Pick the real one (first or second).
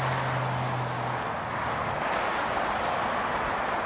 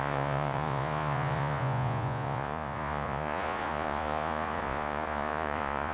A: first